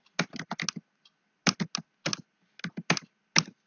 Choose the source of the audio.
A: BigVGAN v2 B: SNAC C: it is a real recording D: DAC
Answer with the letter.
C